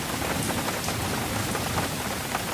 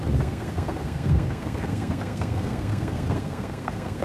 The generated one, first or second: second